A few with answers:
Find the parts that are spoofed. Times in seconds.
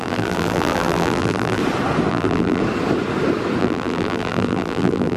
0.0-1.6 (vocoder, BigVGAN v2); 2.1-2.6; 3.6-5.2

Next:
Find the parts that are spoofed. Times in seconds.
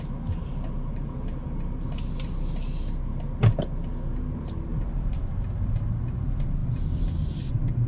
4.7-5.3 (vocoder, BigVGAN v2)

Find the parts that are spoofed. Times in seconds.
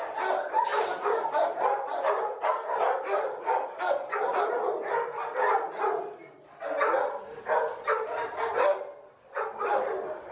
none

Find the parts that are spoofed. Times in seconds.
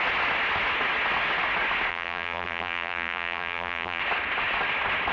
1.9-4.0 (vocoder, BigVGAN v2)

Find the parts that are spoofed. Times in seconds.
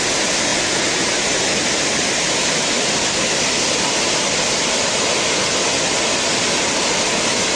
none